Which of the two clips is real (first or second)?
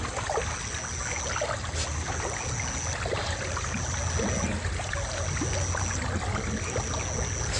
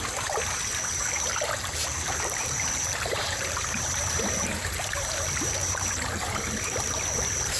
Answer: first